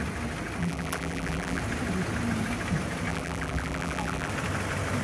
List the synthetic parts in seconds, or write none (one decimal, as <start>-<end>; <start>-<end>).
0.6-1.6; 3.1-4.3